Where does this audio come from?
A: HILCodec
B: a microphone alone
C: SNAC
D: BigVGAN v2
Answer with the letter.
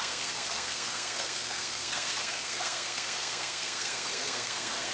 C